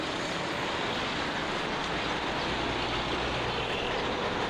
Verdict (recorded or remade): recorded